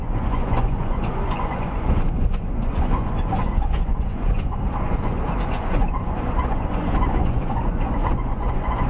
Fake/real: fake